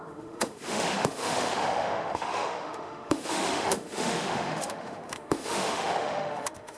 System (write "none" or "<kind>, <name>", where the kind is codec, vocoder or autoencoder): autoencoder, DAC-VAE